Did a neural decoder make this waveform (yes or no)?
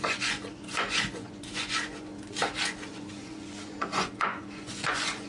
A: yes